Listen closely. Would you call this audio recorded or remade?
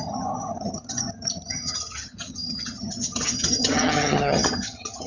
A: remade